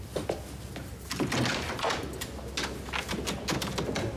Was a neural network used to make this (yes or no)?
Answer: no